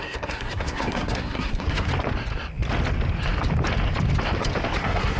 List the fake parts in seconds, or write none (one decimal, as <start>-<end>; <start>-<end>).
0.0-1.9; 4.8-5.2